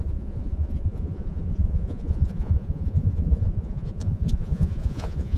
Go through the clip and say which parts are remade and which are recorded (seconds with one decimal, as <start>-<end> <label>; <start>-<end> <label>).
0.0-5.4 remade